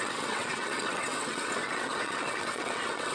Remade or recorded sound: remade